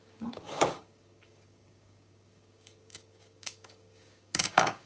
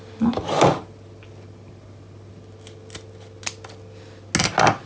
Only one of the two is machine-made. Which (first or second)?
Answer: first